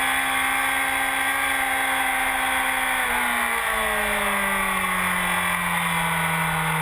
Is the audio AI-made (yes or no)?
no